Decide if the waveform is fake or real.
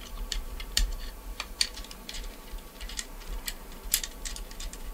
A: fake